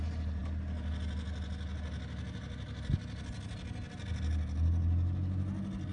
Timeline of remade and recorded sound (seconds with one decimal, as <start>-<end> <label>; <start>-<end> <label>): 0.0-5.9 recorded